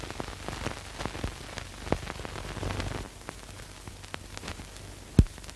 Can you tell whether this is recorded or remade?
recorded